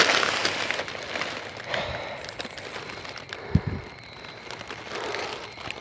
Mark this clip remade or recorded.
recorded